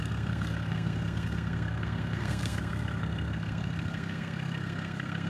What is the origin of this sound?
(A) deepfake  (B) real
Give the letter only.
A